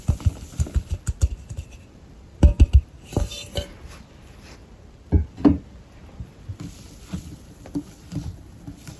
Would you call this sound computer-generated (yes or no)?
yes